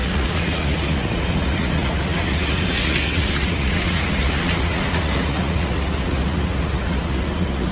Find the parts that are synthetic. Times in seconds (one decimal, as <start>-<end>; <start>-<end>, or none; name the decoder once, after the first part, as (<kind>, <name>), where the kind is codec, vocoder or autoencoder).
0.0-7.7 (vocoder, Vocos)